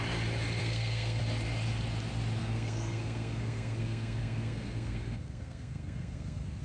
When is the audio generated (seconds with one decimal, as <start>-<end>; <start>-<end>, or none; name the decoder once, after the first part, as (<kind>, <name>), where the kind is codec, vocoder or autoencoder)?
0.6-1.2 (codec, SNAC); 2.4-6.6